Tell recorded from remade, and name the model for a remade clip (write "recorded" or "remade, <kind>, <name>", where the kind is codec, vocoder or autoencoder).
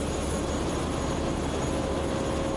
recorded